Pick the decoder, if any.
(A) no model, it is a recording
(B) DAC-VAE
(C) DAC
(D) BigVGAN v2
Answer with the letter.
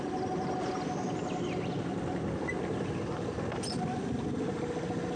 A